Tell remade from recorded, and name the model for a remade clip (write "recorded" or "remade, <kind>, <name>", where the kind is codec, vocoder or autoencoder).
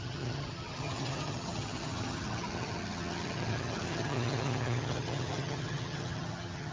remade, vocoder, HiFi-GAN